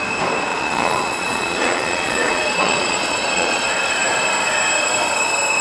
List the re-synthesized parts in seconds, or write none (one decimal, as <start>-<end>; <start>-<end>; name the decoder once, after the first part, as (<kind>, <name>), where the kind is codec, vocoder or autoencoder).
0.5-3.9 (vocoder, Vocos)